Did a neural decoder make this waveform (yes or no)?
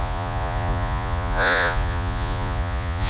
yes